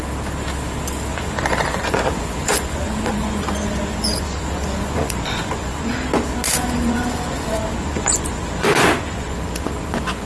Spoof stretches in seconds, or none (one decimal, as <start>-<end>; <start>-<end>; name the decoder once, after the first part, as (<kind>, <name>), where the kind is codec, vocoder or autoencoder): 1.1-5.9 (vocoder, Vocos); 6.5-10.3